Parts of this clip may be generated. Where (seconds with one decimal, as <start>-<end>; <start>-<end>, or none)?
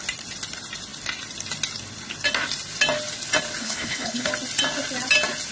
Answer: 3.6-4.3